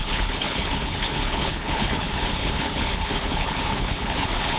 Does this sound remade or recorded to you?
remade